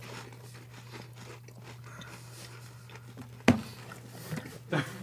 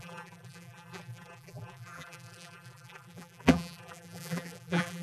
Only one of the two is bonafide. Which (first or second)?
first